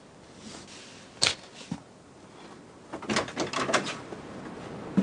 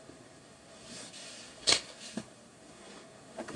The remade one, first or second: second